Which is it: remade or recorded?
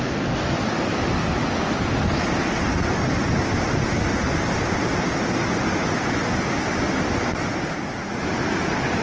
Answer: recorded